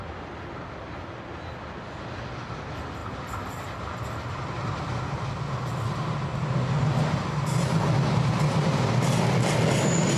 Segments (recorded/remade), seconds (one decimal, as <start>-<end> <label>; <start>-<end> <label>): 0.0-10.2 recorded